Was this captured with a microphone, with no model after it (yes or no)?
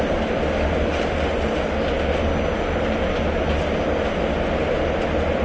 yes